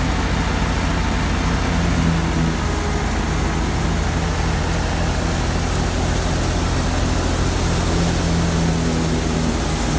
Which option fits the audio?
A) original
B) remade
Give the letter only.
A